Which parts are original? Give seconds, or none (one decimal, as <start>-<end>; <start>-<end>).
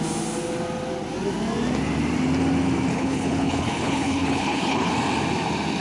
0.0-2.9; 4.9-5.8